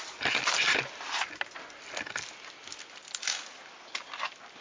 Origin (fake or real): real